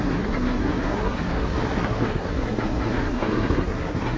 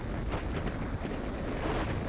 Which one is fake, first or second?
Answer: first